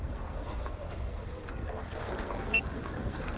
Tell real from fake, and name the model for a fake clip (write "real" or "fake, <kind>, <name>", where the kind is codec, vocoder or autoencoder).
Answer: fake, codec, SNAC